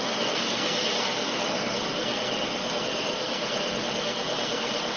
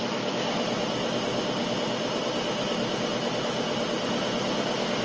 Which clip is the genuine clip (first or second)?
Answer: second